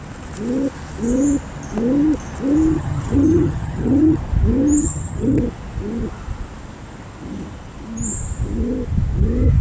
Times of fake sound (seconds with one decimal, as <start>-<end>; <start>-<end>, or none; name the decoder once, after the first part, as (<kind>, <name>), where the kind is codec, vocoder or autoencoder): 2.7-4.2 (vocoder, HiFi-GAN); 4.8-5.4